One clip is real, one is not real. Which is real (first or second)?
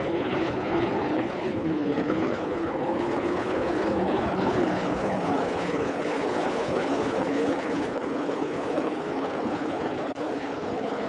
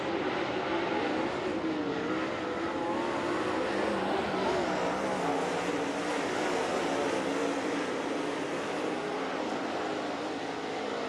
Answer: second